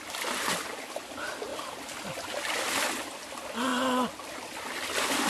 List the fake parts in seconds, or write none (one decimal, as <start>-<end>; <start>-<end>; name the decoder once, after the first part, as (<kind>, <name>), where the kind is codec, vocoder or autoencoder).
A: none